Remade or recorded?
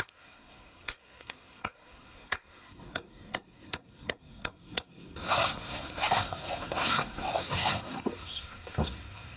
remade